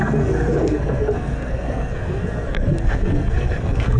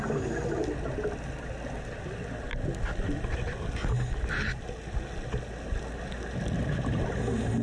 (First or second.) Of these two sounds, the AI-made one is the first